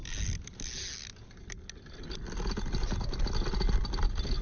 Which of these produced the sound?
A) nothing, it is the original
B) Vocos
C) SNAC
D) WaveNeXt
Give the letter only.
A